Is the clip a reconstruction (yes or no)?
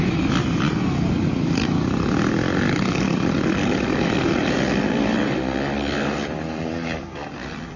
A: yes